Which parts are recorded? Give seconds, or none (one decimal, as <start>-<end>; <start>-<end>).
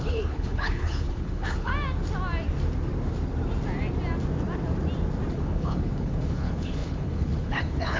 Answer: 1.7-5.3